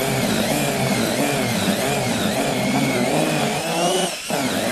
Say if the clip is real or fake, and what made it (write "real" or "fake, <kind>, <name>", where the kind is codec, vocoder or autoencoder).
real